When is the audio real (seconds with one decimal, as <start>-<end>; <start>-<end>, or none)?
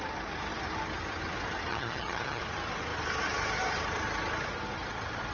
0.0-1.7; 2.4-5.3